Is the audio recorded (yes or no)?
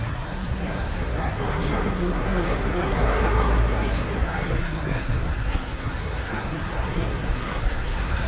no